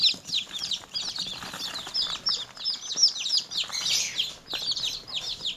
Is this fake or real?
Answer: real